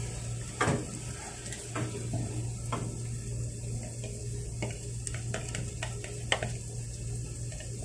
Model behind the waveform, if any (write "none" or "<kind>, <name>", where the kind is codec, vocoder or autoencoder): none